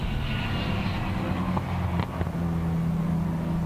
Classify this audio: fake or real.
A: real